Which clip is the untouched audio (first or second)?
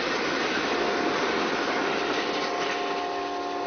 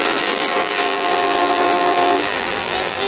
first